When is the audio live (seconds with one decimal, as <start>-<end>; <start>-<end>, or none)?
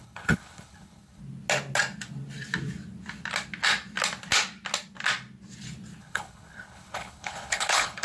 1.2-6.0